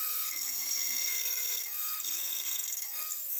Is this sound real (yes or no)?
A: no